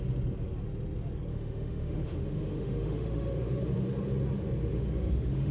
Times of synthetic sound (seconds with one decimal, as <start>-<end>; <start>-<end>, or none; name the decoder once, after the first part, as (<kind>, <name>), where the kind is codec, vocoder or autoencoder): 1.3-3.6 (autoencoder, DAC-VAE); 4.7-5.5